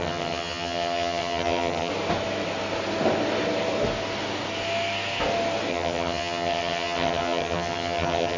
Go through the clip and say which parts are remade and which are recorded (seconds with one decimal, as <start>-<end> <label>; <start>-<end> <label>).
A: 0.0-1.9 remade; 1.9-5.7 recorded; 5.7-8.4 remade